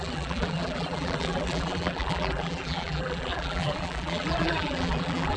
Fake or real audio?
fake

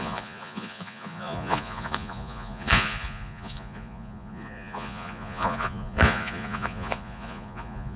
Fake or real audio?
fake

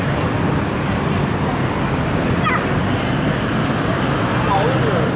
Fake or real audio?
real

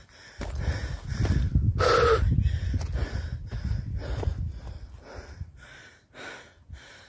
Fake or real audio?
real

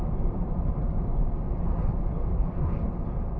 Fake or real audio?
real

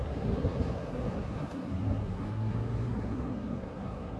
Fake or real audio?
fake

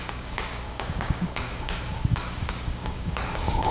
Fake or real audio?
fake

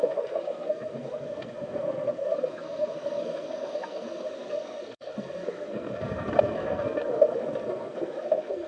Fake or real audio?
fake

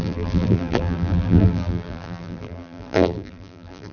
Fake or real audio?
fake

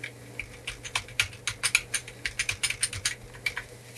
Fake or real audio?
real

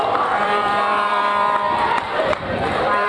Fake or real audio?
fake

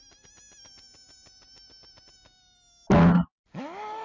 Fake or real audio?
real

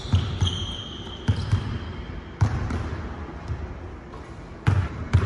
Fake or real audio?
fake